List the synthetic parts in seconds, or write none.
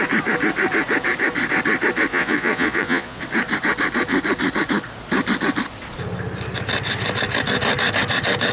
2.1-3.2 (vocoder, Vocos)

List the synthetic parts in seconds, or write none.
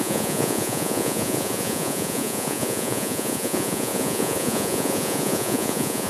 0.0-6.1 (vocoder, Vocos)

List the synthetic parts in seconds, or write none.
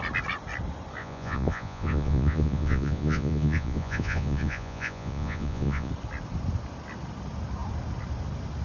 1.0-5.9 (vocoder, Vocos)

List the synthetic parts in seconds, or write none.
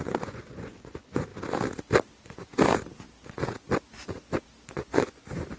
0.0-1.3 (vocoder, Vocos); 4.7-5.6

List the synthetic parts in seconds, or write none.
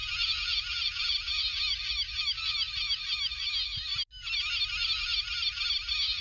0.0-1.4 (vocoder, Vocos)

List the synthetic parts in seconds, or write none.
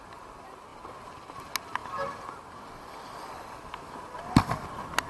none